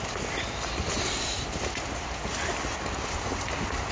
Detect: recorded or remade recorded